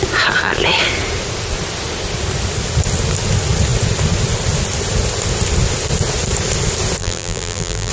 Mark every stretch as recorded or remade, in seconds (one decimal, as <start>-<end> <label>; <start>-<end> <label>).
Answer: 0.0-7.0 recorded; 7.0-7.9 remade